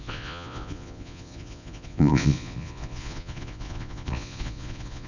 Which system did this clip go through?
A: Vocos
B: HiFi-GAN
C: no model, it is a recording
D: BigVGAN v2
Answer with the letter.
A